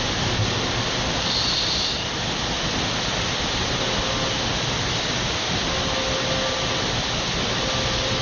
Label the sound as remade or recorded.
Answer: recorded